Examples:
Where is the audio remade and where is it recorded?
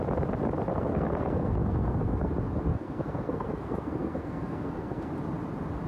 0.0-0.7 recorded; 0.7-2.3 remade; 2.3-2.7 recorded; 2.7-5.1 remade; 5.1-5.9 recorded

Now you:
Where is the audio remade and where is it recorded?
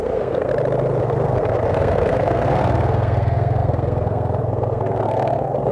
0.0-0.5 remade; 0.5-1.0 recorded; 1.0-5.7 remade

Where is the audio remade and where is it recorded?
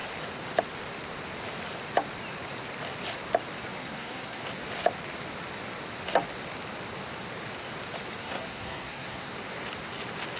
0.0-3.8 recorded; 3.8-4.4 remade; 4.4-8.2 recorded; 8.2-9.3 remade; 9.3-10.4 recorded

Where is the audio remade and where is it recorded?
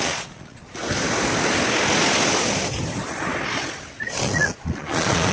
0.0-0.8 remade; 0.8-4.0 recorded; 4.0-5.3 remade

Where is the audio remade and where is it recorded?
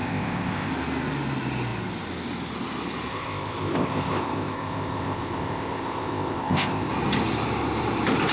0.0-0.7 remade; 0.7-3.1 recorded; 3.1-6.9 remade; 6.9-8.3 recorded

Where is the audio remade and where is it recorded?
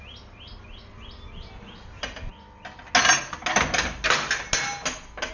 0.0-5.3 recorded